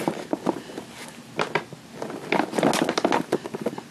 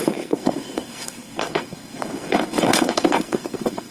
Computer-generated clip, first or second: second